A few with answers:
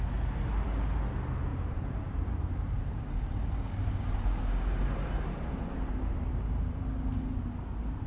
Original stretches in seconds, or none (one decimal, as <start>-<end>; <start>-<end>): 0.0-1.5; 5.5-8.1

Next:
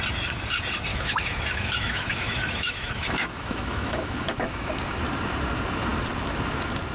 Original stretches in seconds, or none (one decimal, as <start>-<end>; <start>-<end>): 0.0-0.9; 4.7-6.9

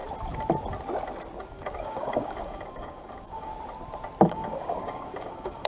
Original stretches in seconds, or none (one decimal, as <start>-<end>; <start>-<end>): 0.0-1.5; 3.5-4.3